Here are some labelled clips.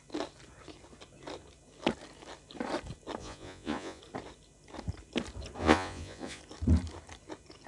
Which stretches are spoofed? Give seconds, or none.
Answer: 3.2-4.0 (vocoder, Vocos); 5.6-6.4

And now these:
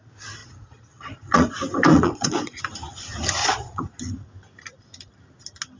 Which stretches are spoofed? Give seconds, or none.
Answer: 0.4-1.5 (vocoder, Vocos); 1.9-2.6; 3.4-4.0